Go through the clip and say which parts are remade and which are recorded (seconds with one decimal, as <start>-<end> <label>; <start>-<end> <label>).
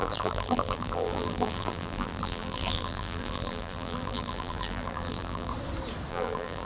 0.0-5.5 remade; 5.5-6.1 recorded; 6.1-6.7 remade